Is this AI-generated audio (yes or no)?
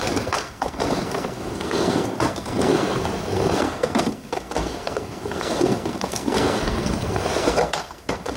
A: yes